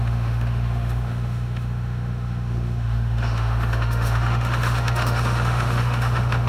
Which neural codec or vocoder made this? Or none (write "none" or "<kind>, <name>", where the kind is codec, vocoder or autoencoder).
autoencoder, DAC-VAE